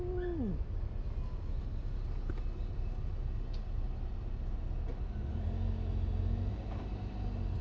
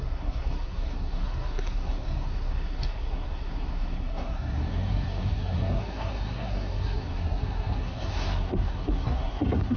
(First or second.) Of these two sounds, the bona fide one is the first